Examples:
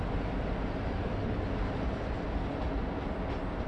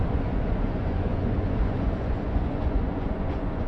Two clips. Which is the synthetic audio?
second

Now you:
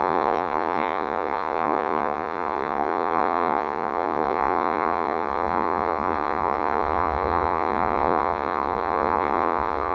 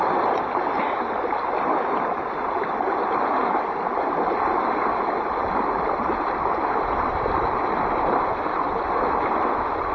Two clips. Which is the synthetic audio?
first